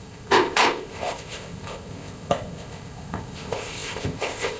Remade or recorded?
remade